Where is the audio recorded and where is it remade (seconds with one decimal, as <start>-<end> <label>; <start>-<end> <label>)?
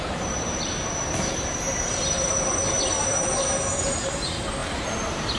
0.0-5.4 remade